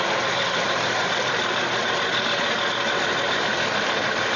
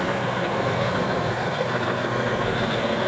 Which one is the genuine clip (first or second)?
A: first